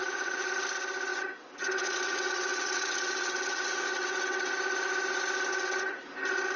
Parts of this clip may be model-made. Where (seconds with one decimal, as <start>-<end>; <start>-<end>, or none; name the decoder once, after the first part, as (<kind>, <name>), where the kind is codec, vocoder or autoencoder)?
0.0-0.5 (vocoder, WaveNeXt); 1.1-4.5; 5.5-6.1